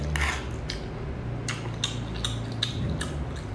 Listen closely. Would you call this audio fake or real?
real